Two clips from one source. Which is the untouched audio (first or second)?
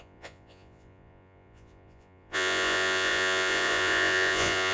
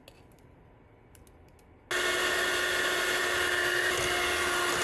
second